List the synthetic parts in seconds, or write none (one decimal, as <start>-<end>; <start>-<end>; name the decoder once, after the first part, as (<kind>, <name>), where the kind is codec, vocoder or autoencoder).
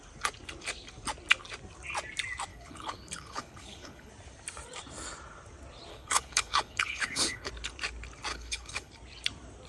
2.5-4.1 (codec, HILCodec); 5.9-7.5; 8.3-8.9